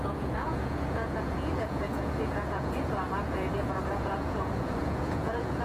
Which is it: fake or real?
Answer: fake